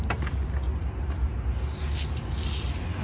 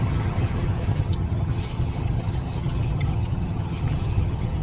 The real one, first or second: first